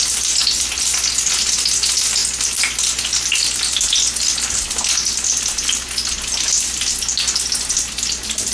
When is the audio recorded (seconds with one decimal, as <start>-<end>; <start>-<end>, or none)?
0.0-8.5